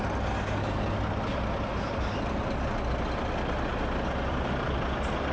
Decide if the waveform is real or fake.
real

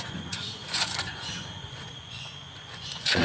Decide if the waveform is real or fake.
fake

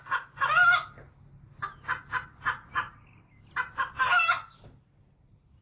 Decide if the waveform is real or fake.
real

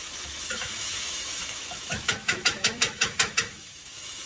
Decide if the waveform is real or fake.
fake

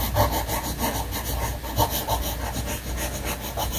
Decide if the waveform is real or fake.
real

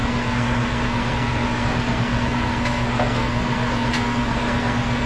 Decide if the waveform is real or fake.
fake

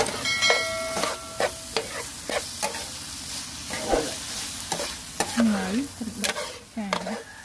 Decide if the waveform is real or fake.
real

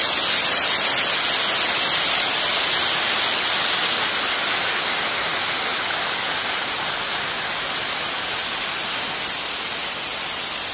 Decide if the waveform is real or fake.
real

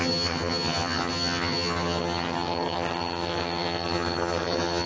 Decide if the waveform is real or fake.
fake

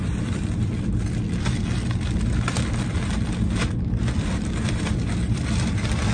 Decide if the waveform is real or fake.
fake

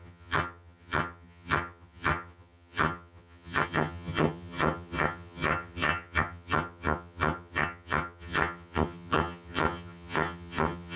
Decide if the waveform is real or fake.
fake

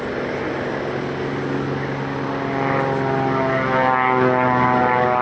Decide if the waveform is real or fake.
real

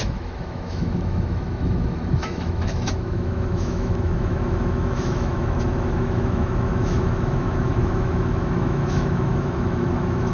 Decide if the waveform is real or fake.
fake